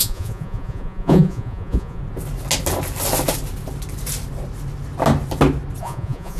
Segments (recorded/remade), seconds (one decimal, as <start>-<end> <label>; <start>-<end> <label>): 0.0-2.0 remade; 2.0-5.8 recorded; 5.8-6.4 remade